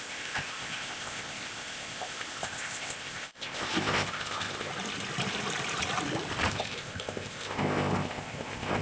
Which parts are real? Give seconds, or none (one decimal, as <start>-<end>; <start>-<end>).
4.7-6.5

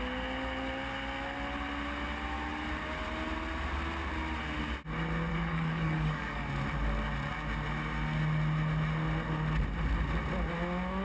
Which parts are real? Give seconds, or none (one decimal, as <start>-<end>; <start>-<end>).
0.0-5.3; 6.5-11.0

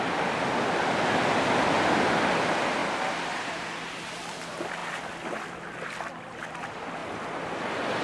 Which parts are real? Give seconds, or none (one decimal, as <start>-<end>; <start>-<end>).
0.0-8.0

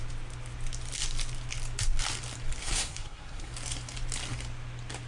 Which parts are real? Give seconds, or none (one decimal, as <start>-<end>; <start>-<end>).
0.0-2.6; 3.5-5.1

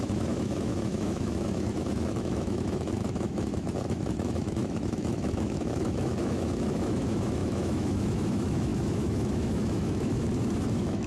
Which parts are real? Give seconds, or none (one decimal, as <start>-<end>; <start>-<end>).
none